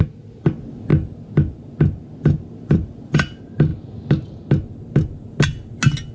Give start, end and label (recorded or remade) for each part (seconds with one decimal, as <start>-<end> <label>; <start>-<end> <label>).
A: 0.0-6.1 recorded